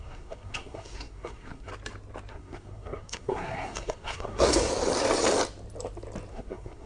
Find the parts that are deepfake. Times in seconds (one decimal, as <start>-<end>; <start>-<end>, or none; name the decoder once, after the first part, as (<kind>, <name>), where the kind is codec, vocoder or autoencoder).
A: 0.0-1.7 (codec, SNAC); 2.3-4.7; 6.3-6.9